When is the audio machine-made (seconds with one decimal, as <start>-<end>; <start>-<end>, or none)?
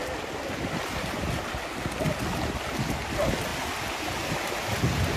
none